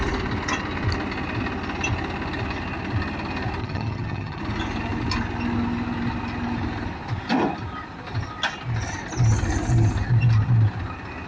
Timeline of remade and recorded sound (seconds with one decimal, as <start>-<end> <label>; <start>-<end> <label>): 0.0-3.6 recorded; 3.6-4.4 remade; 4.4-11.3 recorded